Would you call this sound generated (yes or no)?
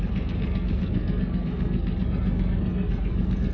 yes